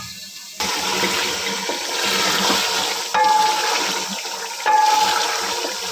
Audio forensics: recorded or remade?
recorded